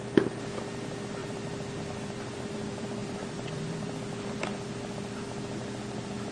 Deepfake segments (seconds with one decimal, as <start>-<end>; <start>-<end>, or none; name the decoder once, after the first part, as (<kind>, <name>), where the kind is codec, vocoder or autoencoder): 1.2-2.5 (vocoder, BigVGAN v2); 3.0-4.2